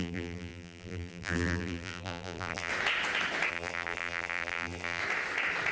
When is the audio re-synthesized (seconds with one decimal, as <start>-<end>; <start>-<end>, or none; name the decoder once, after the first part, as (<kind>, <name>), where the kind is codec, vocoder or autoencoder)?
0.0-2.7 (vocoder, BigVGAN v2); 3.5-5.0